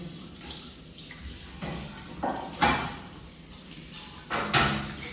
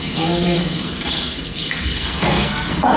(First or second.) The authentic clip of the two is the first